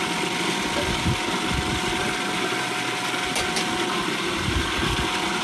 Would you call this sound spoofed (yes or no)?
no